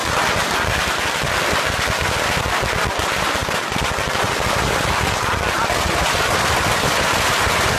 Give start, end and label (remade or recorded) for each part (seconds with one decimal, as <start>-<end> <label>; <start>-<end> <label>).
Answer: 0.0-7.8 recorded